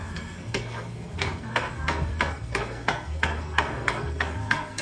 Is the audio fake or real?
fake